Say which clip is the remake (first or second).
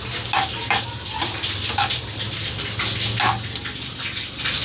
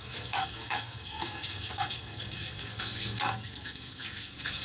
second